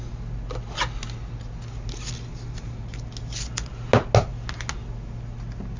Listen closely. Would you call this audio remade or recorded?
recorded